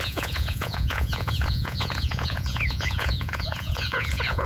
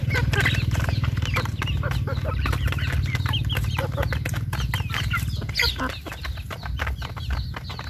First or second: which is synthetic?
first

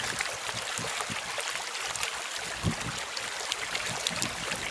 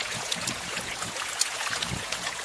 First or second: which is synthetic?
second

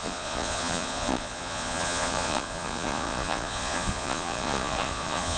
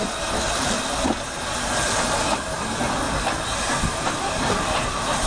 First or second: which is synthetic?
first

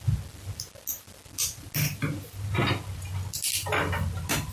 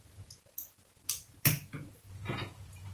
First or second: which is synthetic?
second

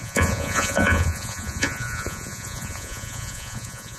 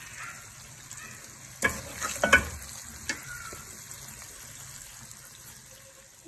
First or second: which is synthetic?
first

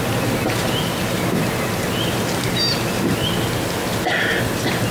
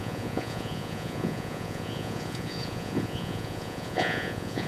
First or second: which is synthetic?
second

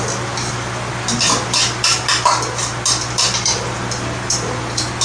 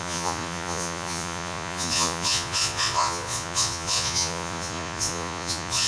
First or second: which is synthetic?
second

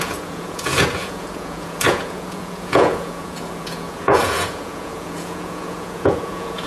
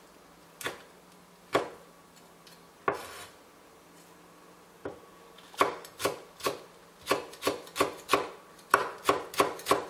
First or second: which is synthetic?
first